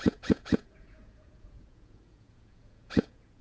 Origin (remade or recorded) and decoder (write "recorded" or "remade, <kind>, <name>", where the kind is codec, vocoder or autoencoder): remade, vocoder, Vocos